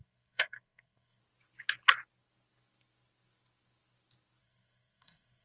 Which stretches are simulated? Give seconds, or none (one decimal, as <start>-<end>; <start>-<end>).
0.0-1.2; 4.4-5.4